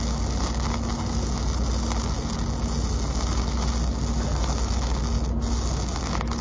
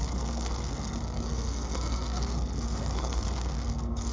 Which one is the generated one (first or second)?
second